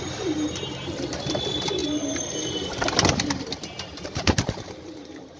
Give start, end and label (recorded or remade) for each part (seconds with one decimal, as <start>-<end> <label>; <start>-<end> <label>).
0.0-5.4 remade